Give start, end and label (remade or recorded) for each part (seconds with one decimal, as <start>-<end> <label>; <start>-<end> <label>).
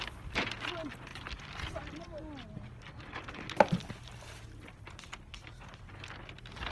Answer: 0.0-6.7 recorded